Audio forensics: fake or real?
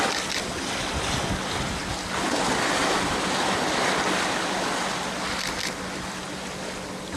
real